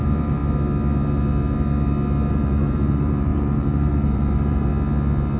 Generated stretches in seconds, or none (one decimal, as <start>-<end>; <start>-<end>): 0.0-0.4; 2.3-4.7